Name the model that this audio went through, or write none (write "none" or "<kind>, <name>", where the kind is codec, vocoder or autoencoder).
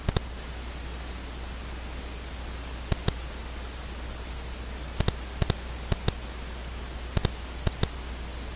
none